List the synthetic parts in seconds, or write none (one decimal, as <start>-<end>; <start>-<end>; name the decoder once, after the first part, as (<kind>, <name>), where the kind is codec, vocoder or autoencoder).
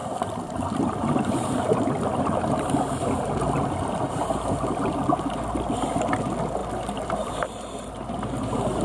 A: 0.0-1.2 (vocoder, BigVGAN v2); 6.6-7.3